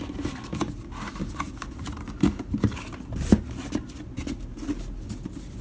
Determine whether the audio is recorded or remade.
recorded